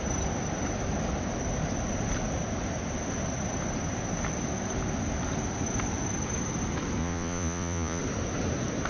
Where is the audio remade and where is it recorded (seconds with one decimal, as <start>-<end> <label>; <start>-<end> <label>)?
0.0-7.0 recorded; 7.0-8.0 remade; 8.0-8.9 recorded